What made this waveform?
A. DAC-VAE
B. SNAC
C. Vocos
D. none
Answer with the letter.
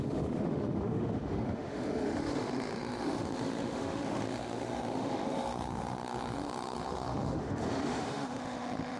A